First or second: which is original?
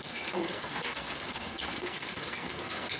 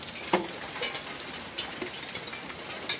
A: second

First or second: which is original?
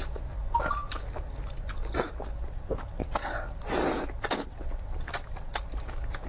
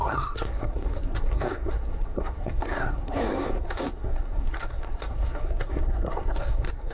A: first